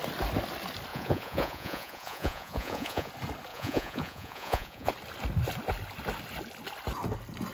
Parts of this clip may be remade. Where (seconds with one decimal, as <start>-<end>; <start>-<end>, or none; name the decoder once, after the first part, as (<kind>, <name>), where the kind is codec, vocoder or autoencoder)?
0.9-3.1 (vocoder, Vocos); 3.5-4.9